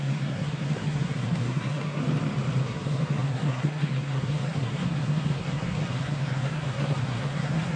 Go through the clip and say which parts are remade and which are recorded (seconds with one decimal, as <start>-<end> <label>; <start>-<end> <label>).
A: 0.0-2.0 remade; 2.0-2.6 recorded; 2.6-7.8 remade

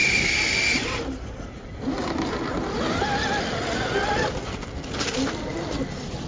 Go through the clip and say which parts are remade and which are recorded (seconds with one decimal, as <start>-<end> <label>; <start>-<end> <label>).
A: 0.0-6.3 recorded

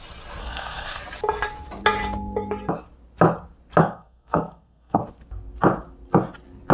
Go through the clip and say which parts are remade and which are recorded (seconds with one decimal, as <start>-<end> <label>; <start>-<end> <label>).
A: 0.0-0.4 recorded; 0.4-1.0 remade; 1.0-3.8 recorded; 3.8-5.0 remade; 5.0-6.7 recorded

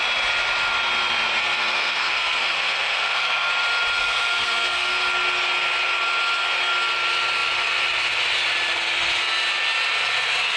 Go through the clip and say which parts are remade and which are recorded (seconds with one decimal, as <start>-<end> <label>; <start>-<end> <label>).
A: 0.0-1.4 recorded; 1.4-3.5 remade; 3.5-4.0 recorded; 4.0-4.9 remade; 4.9-10.6 recorded